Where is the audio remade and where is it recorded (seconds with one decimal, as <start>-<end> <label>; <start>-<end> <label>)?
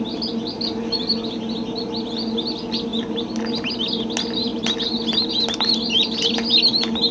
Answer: 0.0-7.1 recorded